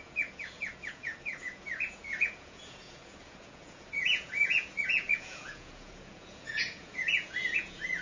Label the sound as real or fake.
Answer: fake